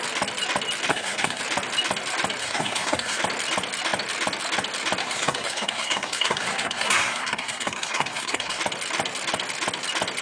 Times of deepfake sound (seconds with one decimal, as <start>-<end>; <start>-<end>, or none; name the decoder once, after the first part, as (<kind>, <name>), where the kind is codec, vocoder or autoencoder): 0.9-1.4 (codec, SNAC); 2.4-3.2; 5.0-8.6